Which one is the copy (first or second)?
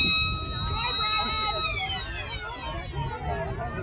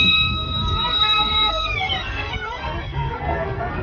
second